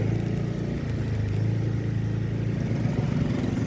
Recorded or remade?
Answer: recorded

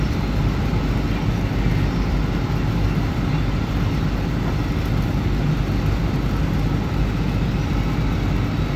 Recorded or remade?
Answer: recorded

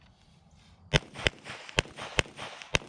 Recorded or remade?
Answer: recorded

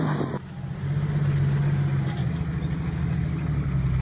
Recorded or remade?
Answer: recorded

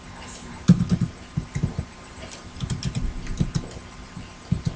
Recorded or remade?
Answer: remade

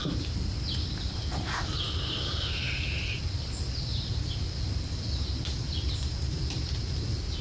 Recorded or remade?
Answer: remade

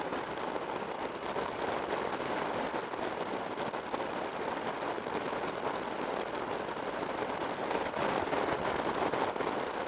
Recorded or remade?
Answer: recorded